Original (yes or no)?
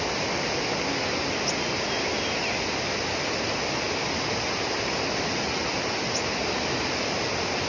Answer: yes